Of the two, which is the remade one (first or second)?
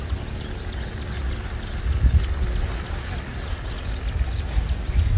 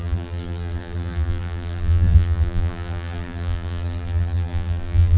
second